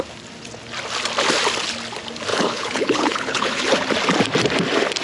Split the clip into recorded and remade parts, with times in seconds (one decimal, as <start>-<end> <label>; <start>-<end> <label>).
0.0-2.3 recorded; 2.3-3.6 remade; 3.6-5.0 recorded

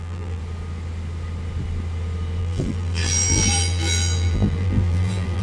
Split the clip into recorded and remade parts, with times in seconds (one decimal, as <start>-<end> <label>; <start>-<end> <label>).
0.0-0.4 remade; 0.4-2.4 recorded; 2.4-5.4 remade

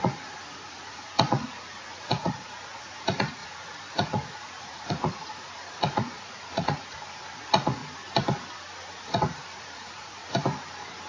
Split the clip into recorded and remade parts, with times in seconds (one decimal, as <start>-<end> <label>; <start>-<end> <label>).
0.0-7.8 remade; 7.8-9.0 recorded; 9.0-10.2 remade; 10.2-11.1 recorded